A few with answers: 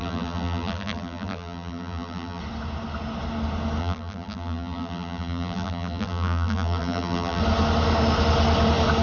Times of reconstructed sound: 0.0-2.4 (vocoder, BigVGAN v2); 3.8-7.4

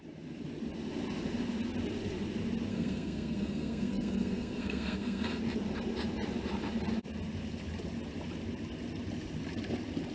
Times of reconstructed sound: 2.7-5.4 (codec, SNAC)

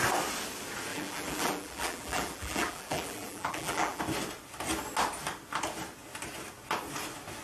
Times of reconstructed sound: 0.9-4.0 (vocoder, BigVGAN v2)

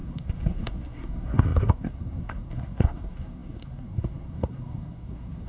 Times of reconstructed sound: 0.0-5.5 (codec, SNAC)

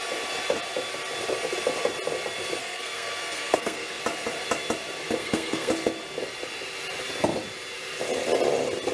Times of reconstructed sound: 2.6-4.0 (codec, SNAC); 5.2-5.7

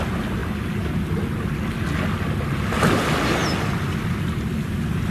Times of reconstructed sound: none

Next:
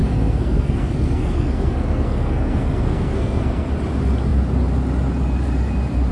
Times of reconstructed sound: 0.0-3.7 (codec, SNAC)